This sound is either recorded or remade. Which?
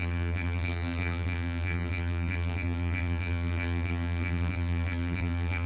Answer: remade